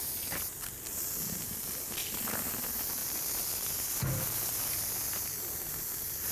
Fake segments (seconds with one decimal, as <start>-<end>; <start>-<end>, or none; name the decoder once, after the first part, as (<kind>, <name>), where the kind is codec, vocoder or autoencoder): none